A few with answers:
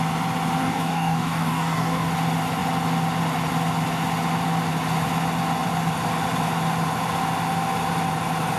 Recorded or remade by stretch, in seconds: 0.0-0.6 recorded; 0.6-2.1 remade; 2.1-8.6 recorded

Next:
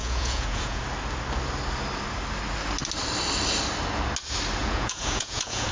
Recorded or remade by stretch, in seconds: 0.0-0.8 remade; 0.8-4.6 recorded; 4.6-5.7 remade

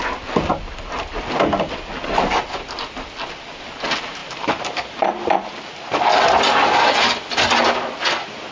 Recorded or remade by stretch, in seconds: 0.0-4.2 recorded; 4.2-5.5 remade; 5.5-8.5 recorded

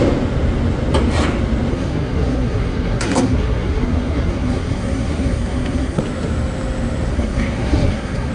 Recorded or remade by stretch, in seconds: 0.0-1.7 recorded; 1.7-6.0 remade; 6.0-7.1 recorded; 7.1-8.3 remade

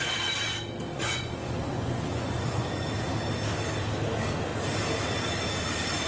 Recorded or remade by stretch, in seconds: 0.0-0.9 recorded; 0.9-2.9 remade; 2.9-6.1 recorded

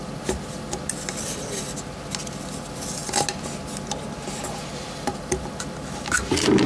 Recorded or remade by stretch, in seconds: 0.0-6.7 recorded

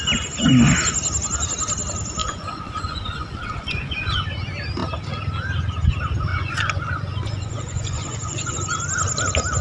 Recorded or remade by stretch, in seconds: 0.0-2.2 recorded; 2.2-4.2 remade; 4.2-6.3 recorded; 6.3-8.5 remade; 8.5-9.6 recorded